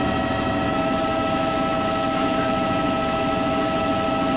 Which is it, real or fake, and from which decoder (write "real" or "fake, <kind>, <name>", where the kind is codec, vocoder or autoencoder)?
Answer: fake, autoencoder, DAC-VAE